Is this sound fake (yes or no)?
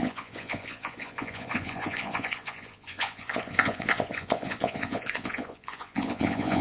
yes